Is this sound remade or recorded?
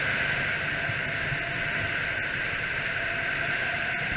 recorded